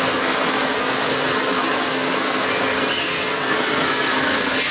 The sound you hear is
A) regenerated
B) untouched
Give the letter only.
A